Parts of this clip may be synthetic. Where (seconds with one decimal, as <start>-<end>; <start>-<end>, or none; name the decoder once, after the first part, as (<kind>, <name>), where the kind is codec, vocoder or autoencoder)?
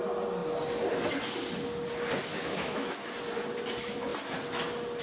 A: 2.3-3.1 (autoencoder, DAC-VAE)